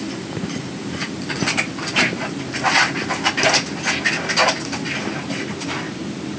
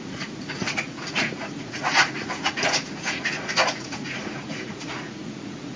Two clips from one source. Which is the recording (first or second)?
first